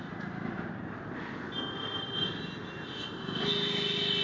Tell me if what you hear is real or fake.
real